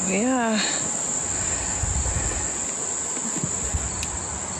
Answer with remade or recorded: recorded